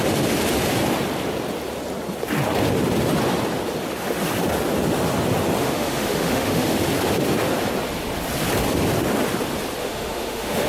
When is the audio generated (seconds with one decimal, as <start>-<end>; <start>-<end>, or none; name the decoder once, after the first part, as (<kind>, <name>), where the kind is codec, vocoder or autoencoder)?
5.6-6.8 (autoencoder, DAC-VAE); 9.8-10.7